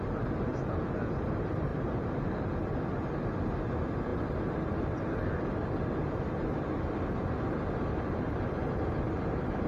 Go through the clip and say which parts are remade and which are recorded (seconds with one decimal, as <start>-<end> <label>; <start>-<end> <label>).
0.0-9.7 recorded